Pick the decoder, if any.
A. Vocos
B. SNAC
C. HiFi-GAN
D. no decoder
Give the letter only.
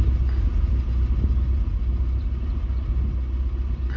D